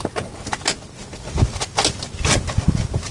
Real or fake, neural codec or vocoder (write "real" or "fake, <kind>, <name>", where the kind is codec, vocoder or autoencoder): real